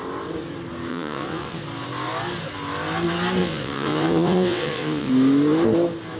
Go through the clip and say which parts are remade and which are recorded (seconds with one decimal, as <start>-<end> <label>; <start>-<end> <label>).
0.0-0.9 recorded; 0.9-1.6 remade; 1.6-3.4 recorded; 3.4-5.1 remade; 5.1-6.2 recorded